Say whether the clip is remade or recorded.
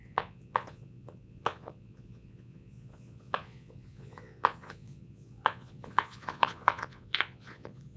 remade